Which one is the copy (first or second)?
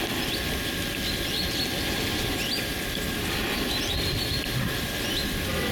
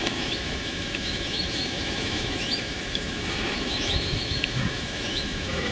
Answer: second